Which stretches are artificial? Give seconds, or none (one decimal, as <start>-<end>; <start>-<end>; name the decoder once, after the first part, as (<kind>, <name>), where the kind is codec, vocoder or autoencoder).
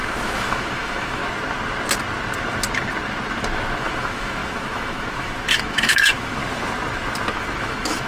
0.0-1.2 (autoencoder, DAC-VAE); 3.8-6.4; 7.3-8.1